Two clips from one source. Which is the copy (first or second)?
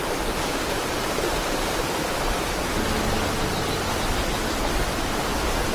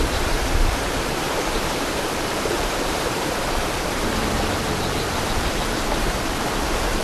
second